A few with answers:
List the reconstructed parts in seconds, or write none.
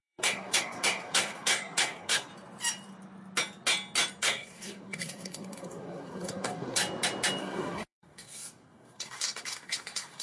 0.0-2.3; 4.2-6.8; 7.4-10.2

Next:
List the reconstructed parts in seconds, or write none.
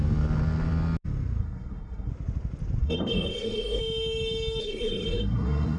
1.4-2.1; 2.8-3.8; 4.6-5.8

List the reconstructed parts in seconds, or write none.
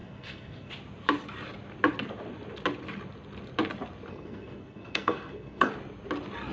0.0-0.7; 4.1-5.7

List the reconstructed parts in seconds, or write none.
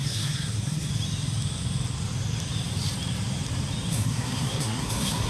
0.0-0.9; 3.9-5.3